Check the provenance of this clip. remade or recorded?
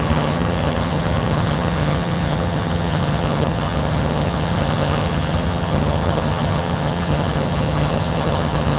remade